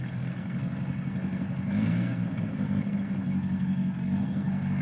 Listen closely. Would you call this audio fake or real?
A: fake